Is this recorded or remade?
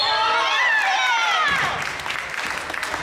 recorded